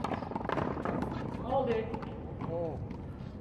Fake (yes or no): no